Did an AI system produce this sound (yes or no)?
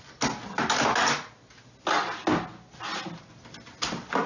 no